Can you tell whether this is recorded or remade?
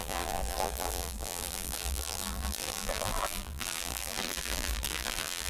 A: remade